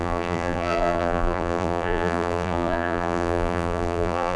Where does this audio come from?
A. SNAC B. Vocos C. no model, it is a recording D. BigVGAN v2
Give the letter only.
D